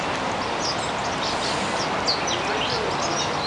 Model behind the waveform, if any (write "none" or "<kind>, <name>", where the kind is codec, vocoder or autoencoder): none